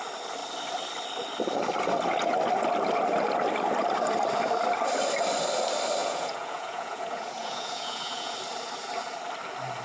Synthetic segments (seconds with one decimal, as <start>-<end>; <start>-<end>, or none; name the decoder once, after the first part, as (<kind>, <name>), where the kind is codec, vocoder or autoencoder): 6.0-8.3 (vocoder, Vocos)